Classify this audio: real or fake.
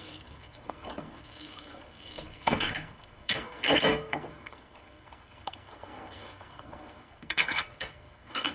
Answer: fake